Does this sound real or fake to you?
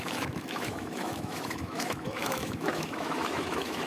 fake